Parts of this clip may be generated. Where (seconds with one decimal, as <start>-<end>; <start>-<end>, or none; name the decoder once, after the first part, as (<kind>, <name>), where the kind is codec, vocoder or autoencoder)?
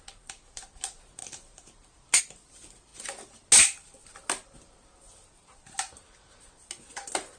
none